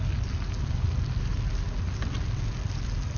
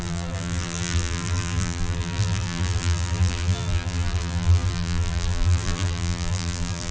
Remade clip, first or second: second